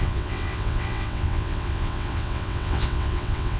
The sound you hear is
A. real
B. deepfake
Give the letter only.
B